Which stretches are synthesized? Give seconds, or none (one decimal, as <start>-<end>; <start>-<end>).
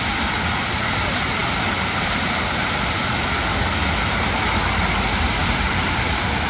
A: 1.4-3.1; 5.4-6.5